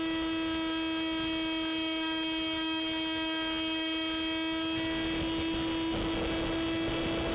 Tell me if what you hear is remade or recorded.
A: recorded